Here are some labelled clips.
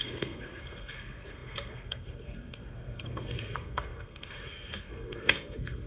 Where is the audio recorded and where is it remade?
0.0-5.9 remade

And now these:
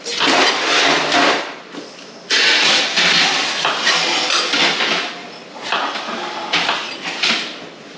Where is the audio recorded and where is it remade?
0.0-8.0 recorded

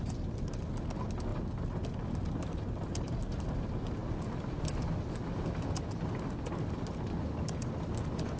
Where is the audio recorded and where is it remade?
0.0-8.4 recorded